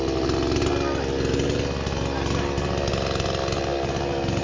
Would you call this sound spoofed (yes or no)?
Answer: no